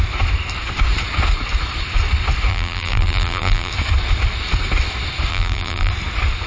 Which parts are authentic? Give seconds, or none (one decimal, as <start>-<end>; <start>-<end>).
0.0-2.5; 3.7-5.3; 5.9-6.5